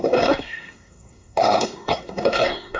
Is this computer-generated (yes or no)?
yes